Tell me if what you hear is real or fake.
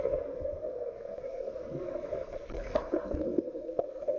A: fake